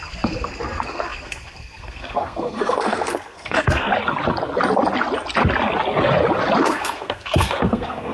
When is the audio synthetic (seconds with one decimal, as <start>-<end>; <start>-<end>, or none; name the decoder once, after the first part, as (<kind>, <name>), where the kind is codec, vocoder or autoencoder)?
0.0-3.9 (codec, SNAC); 6.6-8.1